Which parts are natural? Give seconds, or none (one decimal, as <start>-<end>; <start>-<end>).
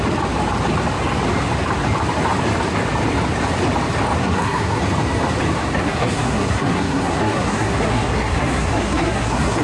0.0-4.2; 4.8-5.8